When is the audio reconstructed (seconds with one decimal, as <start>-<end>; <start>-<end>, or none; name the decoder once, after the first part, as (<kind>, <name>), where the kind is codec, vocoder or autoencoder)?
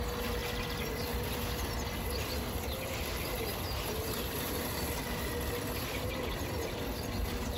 3.5-4.6 (vocoder, BigVGAN v2)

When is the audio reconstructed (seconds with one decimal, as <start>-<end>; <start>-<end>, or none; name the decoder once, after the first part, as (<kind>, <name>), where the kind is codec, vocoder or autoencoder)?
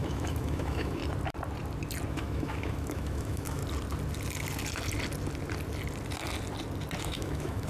0.0-1.0 (autoencoder, DAC-VAE); 2.1-3.6; 7.0-7.7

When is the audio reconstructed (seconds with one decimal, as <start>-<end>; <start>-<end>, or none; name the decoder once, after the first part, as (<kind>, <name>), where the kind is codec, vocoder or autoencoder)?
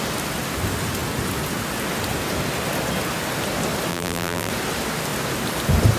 3.9-4.5 (vocoder, BigVGAN v2)